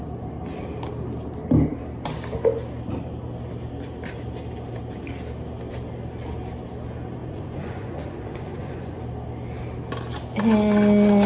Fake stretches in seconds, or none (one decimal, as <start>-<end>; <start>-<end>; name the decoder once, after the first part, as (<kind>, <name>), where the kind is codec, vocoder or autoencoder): 7.2-9.0 (vocoder, Vocos)